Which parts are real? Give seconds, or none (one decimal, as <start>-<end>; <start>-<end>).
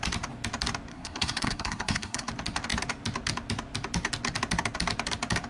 0.0-0.9; 2.3-5.5